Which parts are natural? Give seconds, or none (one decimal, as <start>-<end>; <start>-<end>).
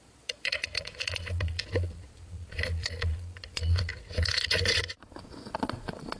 none